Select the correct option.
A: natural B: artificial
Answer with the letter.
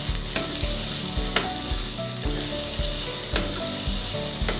A